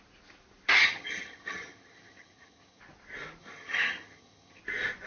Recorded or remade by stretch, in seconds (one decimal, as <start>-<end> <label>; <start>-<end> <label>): 0.0-0.7 recorded; 0.7-2.8 remade; 2.8-3.4 recorded; 3.4-4.6 remade; 4.6-5.1 recorded